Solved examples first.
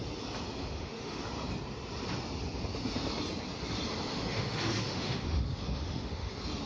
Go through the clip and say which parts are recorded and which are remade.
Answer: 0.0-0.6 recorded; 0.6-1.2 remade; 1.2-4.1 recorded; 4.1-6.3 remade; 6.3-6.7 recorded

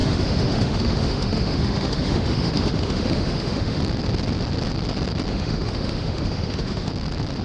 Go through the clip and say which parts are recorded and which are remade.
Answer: 0.0-3.8 remade; 3.8-5.3 recorded; 5.3-6.9 remade; 6.9-7.4 recorded